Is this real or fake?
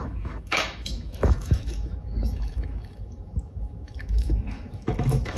fake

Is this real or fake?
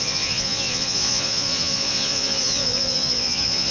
fake